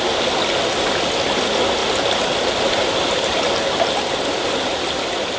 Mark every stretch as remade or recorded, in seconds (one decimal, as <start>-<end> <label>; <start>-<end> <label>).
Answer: 0.0-5.4 recorded